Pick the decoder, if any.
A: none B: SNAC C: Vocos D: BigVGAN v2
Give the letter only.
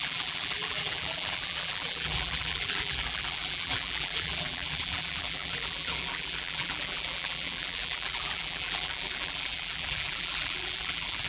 D